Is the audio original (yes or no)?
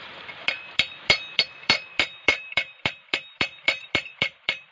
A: no